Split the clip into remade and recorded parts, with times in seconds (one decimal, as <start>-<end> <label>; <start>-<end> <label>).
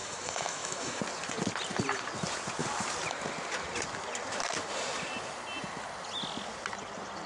0.0-1.0 remade; 1.0-7.3 recorded